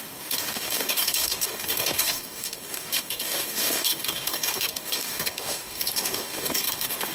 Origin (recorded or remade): remade